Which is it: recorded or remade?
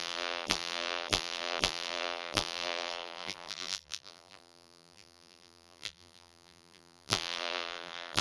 remade